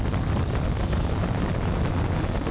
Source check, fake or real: real